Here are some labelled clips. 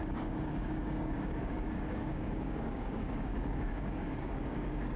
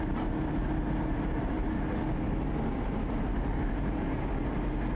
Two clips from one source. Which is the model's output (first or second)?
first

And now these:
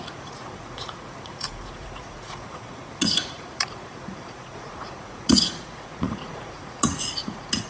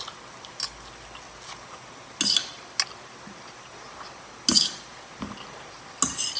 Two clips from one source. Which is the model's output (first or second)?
first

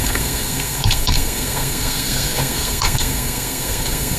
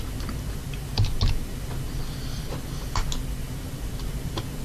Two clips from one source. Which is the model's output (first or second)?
first